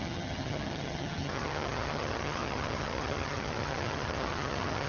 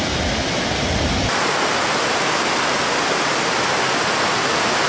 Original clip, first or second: second